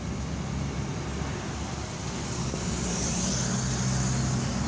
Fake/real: real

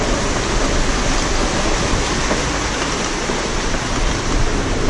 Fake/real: real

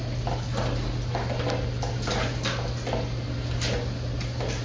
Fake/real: real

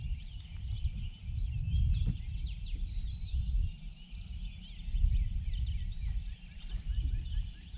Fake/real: real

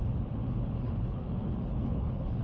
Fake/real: fake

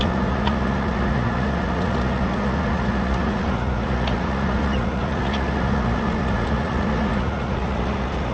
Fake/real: fake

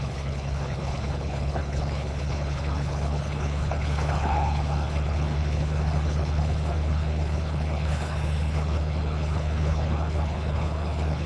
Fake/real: fake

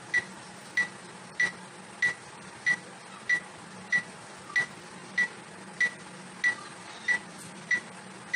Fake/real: real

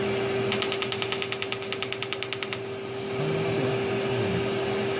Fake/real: real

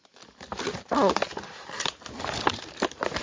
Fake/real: real